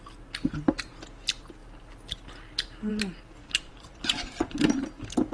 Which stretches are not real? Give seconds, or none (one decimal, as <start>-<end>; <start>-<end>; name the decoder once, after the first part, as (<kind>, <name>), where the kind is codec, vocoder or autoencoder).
3.4-4.8 (vocoder, BigVGAN v2)